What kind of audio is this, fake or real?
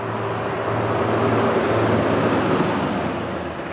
real